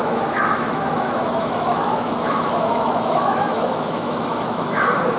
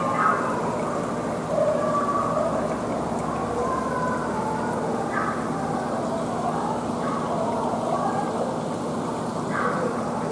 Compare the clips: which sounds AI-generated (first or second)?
first